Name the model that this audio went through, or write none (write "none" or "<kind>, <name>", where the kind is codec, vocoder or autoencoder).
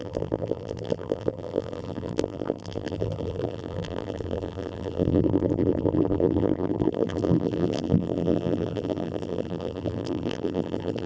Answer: vocoder, BigVGAN v2